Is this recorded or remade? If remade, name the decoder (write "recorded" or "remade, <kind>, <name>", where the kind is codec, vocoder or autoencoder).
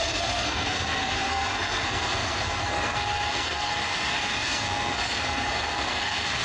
remade, codec, SNAC